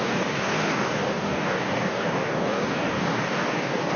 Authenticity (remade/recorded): remade